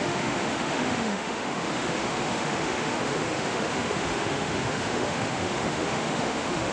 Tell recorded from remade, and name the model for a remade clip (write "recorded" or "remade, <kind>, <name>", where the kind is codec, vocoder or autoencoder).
remade, autoencoder, DAC-VAE